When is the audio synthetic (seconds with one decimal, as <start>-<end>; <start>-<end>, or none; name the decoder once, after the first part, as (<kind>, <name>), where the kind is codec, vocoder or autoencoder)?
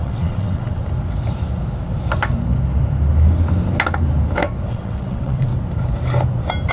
0.0-0.8 (vocoder, WaveNeXt); 4.7-5.5